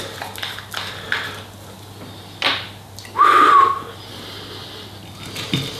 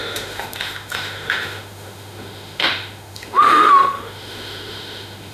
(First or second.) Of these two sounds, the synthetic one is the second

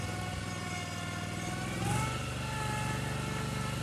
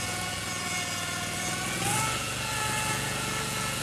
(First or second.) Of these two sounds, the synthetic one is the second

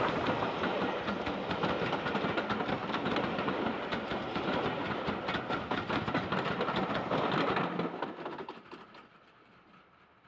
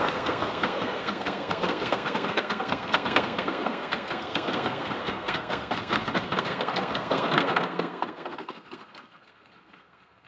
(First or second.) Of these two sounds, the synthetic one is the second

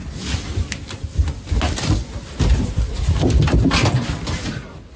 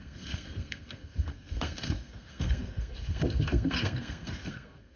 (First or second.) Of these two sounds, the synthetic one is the second